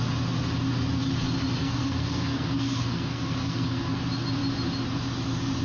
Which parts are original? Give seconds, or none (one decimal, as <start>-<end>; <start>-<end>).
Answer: 0.0-1.6; 4.0-5.6